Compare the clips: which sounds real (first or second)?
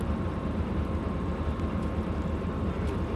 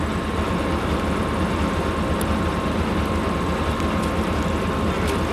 second